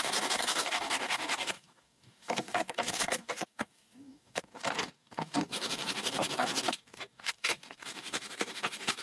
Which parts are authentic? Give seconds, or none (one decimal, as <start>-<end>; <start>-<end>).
none